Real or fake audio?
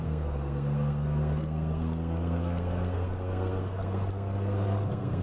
fake